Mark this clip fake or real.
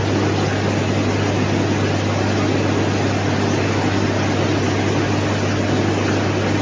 real